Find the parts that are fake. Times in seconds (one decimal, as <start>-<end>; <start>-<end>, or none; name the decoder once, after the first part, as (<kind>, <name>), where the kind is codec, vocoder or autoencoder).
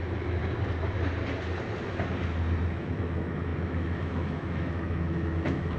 0.0-0.4 (autoencoder, DAC-VAE); 2.7-5.8